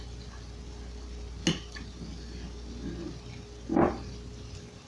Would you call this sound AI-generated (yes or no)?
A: no